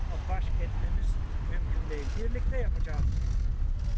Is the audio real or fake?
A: real